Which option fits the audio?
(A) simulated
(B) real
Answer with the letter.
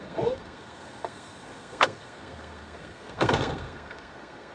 A